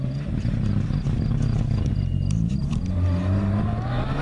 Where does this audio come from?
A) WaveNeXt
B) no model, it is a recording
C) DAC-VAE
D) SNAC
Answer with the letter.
B